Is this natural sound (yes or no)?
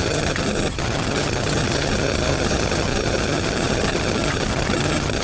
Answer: no